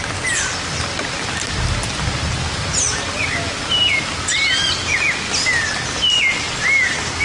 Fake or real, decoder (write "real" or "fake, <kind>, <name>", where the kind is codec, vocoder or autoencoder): real